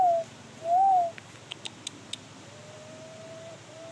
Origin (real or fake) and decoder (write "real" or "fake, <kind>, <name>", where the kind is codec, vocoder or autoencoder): real